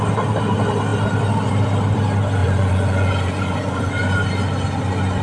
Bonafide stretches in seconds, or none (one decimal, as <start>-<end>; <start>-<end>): 0.0-2.4; 3.8-5.2